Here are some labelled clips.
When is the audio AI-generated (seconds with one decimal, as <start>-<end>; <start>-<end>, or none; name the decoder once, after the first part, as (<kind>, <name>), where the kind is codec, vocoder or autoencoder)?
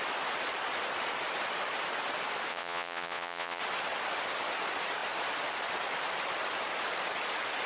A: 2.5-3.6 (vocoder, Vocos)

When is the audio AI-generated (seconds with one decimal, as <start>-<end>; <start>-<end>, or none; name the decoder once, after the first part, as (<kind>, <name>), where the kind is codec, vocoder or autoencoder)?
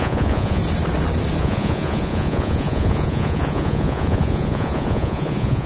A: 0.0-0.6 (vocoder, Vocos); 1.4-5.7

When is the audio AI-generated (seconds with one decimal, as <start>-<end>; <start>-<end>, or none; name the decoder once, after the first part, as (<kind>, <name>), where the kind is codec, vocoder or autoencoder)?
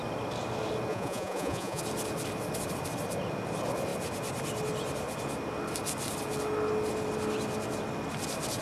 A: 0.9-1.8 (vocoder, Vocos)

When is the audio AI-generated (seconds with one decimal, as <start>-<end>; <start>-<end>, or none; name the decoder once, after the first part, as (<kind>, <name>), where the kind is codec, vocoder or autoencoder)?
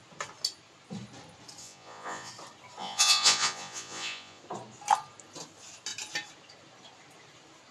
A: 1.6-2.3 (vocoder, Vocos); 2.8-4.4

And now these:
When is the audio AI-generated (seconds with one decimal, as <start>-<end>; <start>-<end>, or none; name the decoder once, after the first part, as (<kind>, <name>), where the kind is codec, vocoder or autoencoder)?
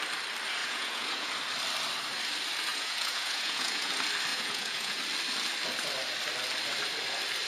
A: 0.6-1.3 (vocoder, Vocos); 2.7-3.9; 4.3-5.0